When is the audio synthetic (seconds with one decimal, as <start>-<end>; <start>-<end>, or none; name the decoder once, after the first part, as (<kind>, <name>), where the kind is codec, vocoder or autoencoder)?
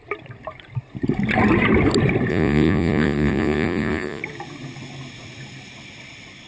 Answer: 2.3-4.2 (vocoder, Vocos)